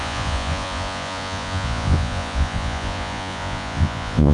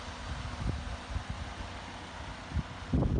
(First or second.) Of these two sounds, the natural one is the second